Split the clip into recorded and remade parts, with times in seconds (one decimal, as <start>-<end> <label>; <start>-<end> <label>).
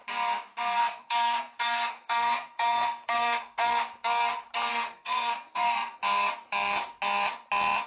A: 0.0-0.8 recorded; 0.8-3.7 remade; 3.7-4.7 recorded; 4.7-6.0 remade; 6.0-7.9 recorded